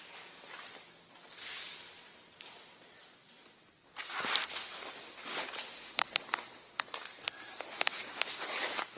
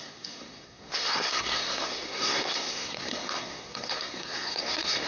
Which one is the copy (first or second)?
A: second